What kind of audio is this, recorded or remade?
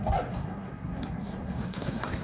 remade